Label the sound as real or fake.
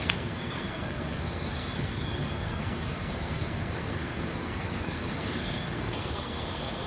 fake